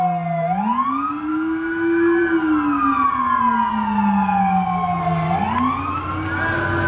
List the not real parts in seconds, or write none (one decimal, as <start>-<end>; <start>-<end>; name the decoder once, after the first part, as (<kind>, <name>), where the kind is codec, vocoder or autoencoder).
1.3-2.2 (autoencoder, DAC-VAE)